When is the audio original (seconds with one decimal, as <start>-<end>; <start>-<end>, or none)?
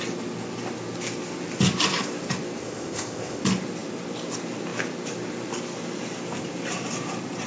0.0-2.6; 3.4-7.5